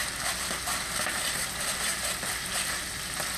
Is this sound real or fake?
real